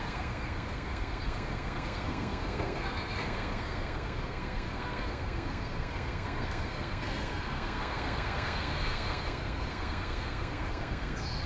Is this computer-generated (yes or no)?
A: yes